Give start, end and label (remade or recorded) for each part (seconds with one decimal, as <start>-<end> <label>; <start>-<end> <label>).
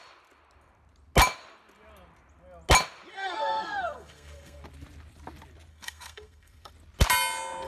0.0-3.1 recorded; 3.1-4.6 remade; 4.6-5.7 recorded; 5.7-6.7 remade; 6.7-7.7 recorded